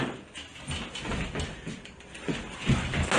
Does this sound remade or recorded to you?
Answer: recorded